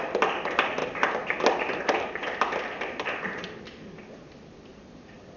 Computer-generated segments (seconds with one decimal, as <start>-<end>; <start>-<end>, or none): none